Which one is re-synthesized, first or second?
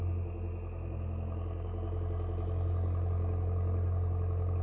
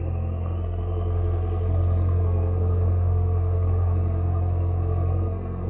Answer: second